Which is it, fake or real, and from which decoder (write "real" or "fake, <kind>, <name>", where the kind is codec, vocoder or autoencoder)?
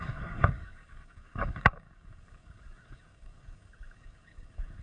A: fake, codec, DAC